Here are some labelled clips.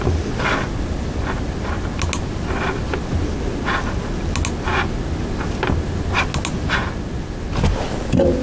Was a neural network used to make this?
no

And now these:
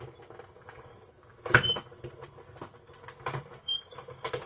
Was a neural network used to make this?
no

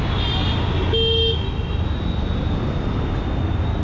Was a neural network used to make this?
no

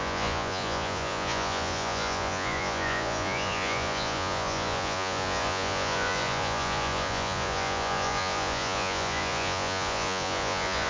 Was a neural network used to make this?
yes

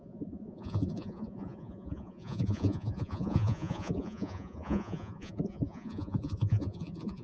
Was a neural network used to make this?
yes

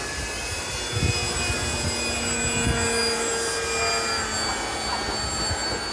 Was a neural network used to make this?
no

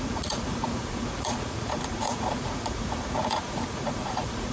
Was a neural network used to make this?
yes